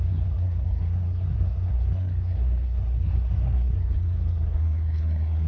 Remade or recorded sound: remade